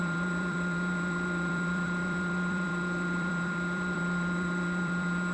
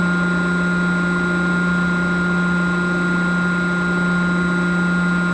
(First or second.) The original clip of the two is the second